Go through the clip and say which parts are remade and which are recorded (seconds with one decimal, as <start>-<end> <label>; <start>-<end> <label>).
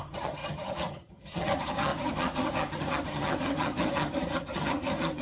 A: 0.0-5.2 remade